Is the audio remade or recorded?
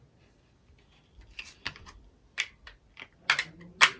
recorded